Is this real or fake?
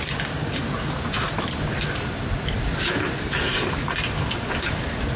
real